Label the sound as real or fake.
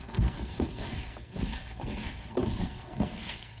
fake